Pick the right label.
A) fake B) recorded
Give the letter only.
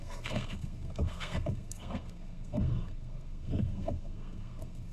A